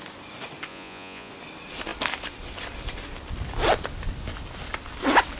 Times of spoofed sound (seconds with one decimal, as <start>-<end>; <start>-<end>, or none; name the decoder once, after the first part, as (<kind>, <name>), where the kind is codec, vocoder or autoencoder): 0.7-1.3 (vocoder, Vocos)